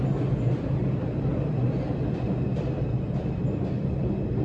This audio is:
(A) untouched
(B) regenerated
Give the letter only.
A